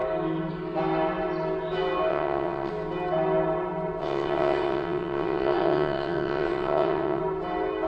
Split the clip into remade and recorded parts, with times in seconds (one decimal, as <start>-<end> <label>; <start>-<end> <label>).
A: 0.0-2.1 recorded; 2.1-2.7 remade; 2.7-4.0 recorded; 4.0-7.2 remade; 7.2-7.9 recorded